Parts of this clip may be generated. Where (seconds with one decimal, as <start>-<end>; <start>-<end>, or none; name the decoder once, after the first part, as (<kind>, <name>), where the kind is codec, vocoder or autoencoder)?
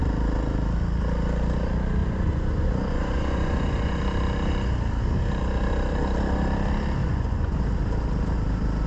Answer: 2.0-4.0 (vocoder, Vocos); 7.0-7.6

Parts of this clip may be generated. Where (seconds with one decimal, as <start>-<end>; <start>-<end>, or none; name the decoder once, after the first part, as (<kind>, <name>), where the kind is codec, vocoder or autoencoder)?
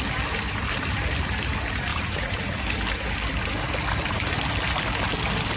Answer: 1.9-2.6 (vocoder, Vocos)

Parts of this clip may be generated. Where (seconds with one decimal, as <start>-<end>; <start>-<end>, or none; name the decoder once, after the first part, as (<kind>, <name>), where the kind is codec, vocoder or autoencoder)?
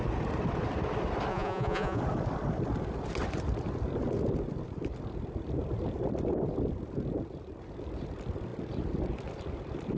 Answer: 1.3-2.0 (vocoder, Vocos)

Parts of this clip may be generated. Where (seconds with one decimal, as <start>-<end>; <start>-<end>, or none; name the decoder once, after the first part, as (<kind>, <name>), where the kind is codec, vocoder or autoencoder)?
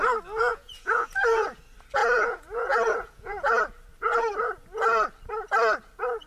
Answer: 0.5-1.6 (vocoder, Vocos); 2.0-3.6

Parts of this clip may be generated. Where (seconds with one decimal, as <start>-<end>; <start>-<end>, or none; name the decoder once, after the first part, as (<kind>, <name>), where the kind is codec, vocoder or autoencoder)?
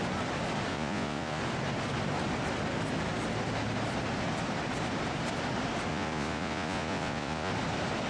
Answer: 0.7-1.4 (vocoder, Vocos); 5.9-7.5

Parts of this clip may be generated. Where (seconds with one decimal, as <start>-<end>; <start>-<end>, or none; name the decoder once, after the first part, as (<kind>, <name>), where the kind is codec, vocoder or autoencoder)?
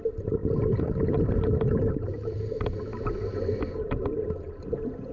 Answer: none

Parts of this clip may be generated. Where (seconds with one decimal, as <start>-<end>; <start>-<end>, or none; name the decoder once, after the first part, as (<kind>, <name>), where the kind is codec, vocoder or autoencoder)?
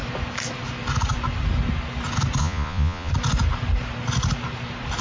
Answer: 2.4-3.1 (vocoder, Vocos)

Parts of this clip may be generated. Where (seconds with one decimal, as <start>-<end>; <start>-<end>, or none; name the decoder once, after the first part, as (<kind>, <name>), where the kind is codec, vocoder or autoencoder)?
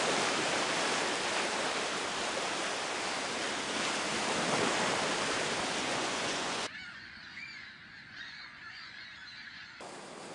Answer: 5.8-9.9 (vocoder, Vocos)